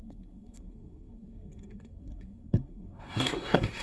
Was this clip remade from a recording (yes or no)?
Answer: yes